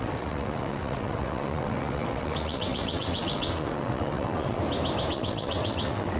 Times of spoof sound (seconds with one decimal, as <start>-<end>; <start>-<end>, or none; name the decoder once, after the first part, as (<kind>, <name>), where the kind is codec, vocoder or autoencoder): 0.0-4.6 (vocoder, WaveNeXt); 5.1-6.2